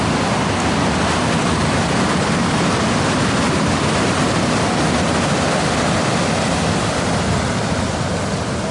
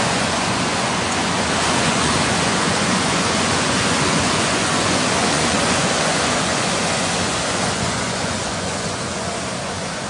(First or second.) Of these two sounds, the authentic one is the first